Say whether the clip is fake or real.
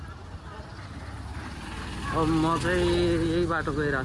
real